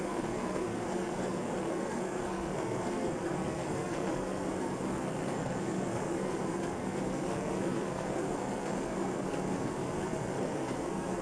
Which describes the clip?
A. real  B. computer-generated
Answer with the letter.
B